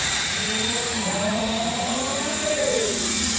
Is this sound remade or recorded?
remade